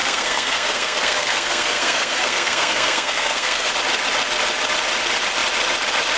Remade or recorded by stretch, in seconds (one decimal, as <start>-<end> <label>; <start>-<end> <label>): 0.0-3.7 remade; 3.7-6.2 recorded